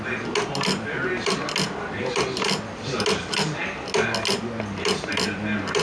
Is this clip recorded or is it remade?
recorded